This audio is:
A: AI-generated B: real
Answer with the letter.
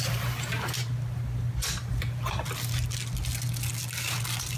B